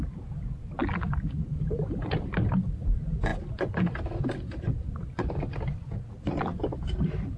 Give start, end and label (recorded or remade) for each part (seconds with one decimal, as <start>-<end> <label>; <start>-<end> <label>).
0.0-7.4 remade